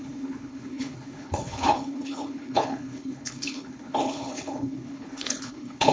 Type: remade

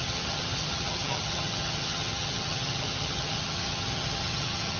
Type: remade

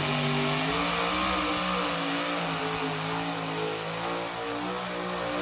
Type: recorded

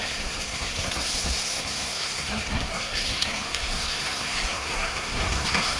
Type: remade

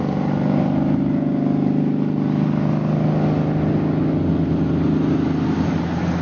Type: recorded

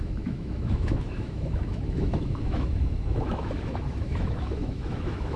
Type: remade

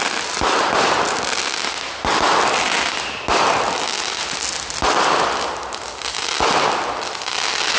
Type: recorded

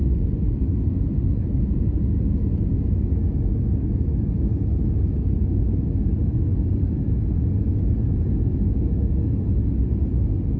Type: recorded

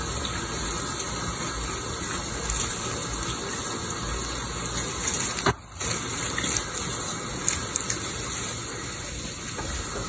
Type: recorded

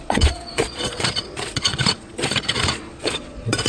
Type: remade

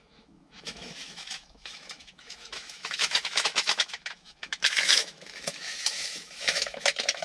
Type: remade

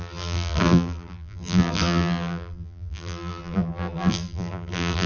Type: remade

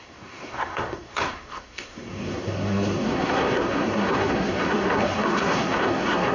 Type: remade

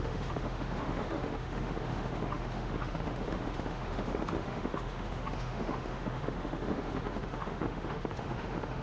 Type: remade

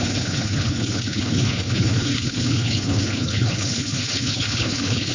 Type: remade